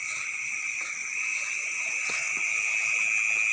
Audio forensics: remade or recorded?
recorded